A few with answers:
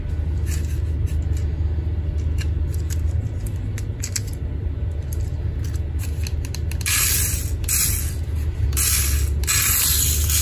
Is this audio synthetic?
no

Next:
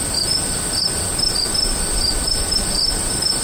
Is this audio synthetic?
no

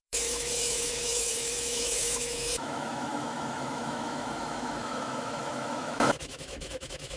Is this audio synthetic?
yes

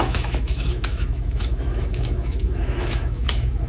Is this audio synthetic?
yes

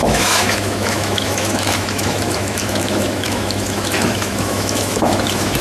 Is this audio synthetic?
yes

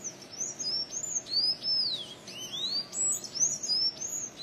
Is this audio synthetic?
no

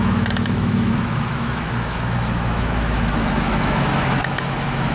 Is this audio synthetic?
yes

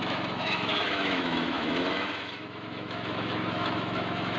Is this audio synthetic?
yes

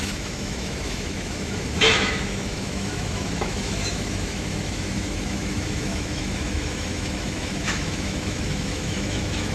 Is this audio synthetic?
yes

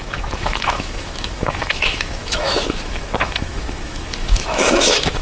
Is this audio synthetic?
yes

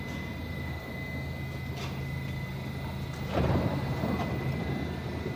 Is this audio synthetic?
no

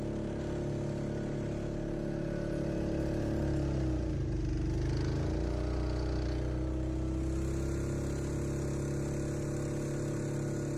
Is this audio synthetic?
no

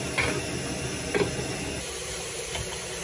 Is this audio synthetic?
no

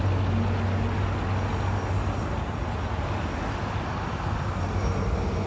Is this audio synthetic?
no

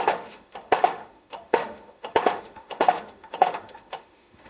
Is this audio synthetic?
yes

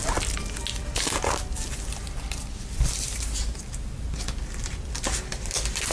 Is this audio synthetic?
no